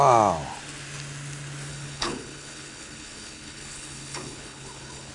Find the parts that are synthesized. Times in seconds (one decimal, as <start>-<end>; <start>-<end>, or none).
1.7-5.1